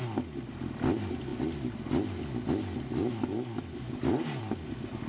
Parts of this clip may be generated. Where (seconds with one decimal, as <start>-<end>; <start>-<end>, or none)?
none